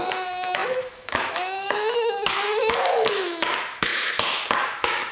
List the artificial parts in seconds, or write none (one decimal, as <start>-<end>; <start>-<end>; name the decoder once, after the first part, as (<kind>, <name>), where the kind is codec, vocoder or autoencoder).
0.0-5.1 (autoencoder, DAC-VAE)